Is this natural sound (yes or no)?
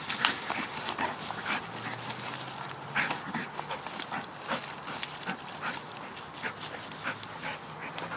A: yes